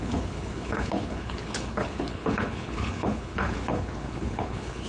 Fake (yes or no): yes